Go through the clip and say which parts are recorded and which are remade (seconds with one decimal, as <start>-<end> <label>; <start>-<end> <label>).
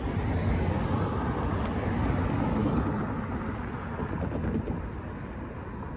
0.0-6.0 recorded